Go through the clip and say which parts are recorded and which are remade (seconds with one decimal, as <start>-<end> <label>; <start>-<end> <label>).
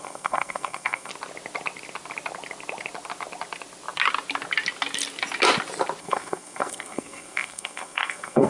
0.0-1.1 remade; 1.1-6.0 recorded; 6.0-8.5 remade